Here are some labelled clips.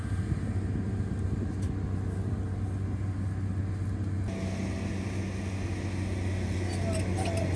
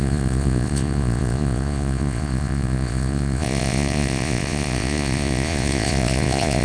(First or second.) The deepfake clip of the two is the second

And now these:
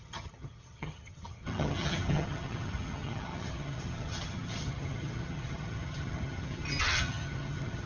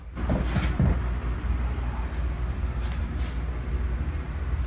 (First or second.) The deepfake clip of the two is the first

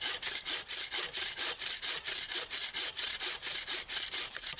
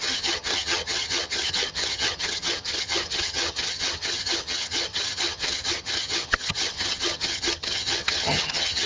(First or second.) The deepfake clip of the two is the second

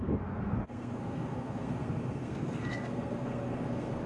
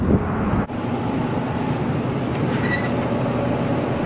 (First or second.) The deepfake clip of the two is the first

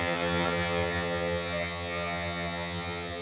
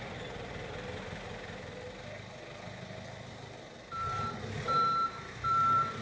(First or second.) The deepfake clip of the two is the first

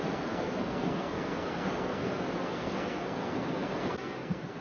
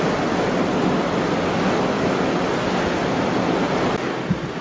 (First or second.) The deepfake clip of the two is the first